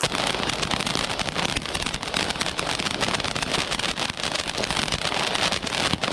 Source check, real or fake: real